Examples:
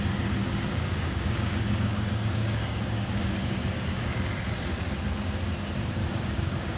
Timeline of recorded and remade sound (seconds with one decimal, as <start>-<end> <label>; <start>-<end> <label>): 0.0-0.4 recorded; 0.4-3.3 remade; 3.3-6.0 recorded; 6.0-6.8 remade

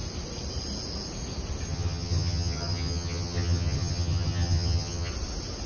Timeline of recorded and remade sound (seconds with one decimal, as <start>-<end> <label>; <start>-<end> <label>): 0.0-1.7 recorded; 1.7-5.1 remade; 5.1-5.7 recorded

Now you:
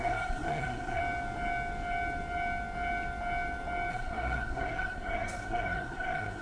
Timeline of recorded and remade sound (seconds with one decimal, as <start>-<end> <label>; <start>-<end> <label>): 0.0-1.0 remade; 1.0-3.9 recorded; 3.9-6.4 remade

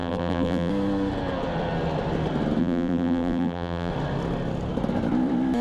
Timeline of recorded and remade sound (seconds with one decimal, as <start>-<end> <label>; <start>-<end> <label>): 0.0-0.7 remade; 0.7-2.6 recorded; 2.6-3.9 remade; 3.9-5.6 recorded

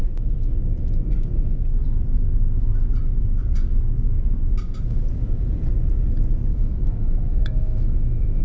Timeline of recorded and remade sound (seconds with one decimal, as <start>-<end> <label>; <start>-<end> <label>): 0.0-6.5 recorded; 6.5-8.4 remade

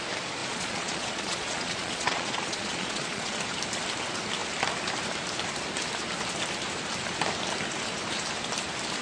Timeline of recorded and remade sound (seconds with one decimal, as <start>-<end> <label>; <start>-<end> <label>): 0.0-0.4 recorded; 0.4-3.4 remade; 3.4-9.0 recorded